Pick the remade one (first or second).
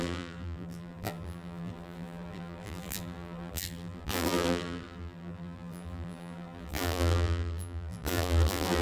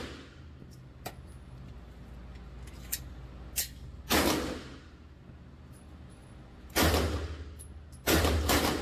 first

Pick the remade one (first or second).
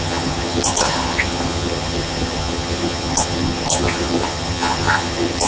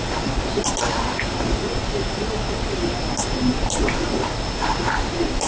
first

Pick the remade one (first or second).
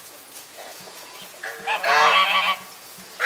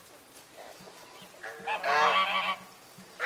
first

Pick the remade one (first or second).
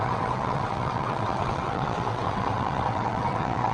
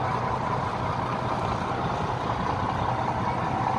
first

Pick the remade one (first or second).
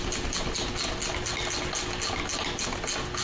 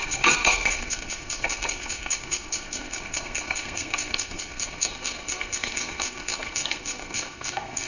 second